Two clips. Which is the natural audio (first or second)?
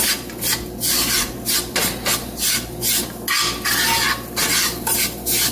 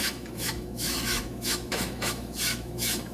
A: first